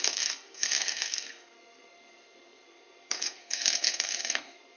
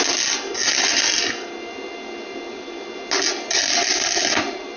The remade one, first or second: first